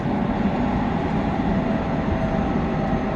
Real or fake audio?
real